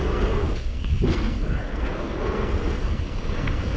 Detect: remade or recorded remade